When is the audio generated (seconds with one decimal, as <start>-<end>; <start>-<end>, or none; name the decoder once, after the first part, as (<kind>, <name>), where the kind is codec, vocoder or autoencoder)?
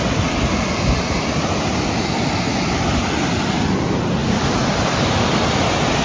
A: none